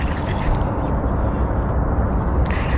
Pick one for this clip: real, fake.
real